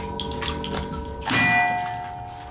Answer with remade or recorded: recorded